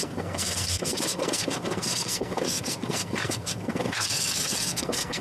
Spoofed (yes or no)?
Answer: yes